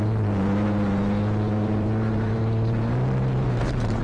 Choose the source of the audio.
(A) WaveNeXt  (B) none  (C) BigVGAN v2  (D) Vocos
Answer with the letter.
C